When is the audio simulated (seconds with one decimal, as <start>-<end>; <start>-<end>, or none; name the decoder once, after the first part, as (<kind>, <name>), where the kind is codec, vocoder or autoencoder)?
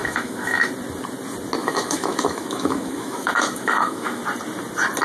0.0-0.7 (autoencoder, DAC-VAE); 1.6-4.2